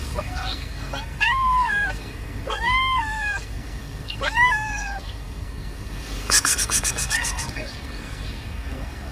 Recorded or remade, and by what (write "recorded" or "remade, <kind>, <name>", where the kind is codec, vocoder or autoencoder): remade, codec, SNAC